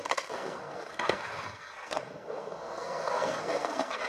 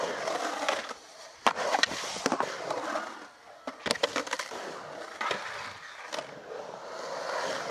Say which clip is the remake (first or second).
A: first